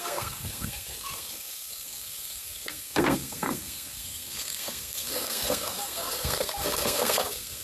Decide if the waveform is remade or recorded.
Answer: remade